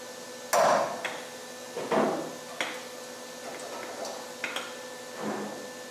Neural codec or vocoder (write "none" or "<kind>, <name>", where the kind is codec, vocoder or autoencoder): none